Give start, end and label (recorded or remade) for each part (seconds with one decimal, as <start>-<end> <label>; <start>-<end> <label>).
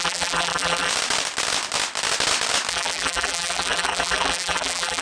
0.0-0.9 remade; 0.9-2.7 recorded; 2.7-5.0 remade